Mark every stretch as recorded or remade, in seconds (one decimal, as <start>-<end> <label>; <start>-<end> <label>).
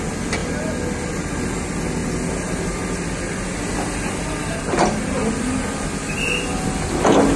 0.0-7.4 recorded